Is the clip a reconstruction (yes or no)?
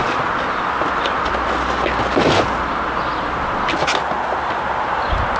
no